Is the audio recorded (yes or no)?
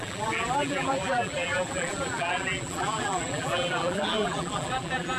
no